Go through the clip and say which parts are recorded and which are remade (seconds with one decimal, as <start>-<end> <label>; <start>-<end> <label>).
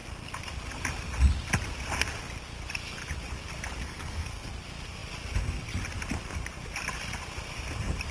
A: 0.0-3.8 recorded; 3.8-4.5 remade; 4.5-8.1 recorded